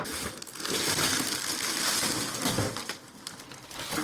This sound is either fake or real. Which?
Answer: real